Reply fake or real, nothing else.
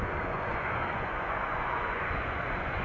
fake